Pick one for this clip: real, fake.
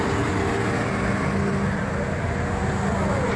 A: real